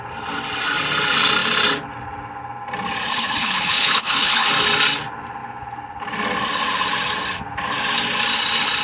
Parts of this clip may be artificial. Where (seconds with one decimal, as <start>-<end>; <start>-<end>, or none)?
3.1-4.5